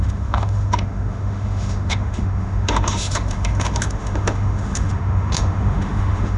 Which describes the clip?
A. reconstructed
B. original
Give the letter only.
A